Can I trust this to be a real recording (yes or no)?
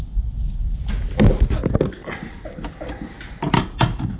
yes